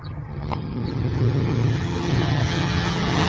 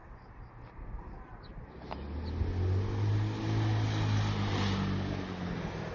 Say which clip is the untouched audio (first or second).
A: second